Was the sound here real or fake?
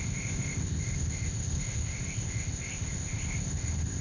fake